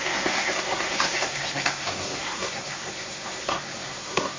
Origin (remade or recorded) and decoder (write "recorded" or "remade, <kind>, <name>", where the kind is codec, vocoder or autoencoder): remade, codec, SNAC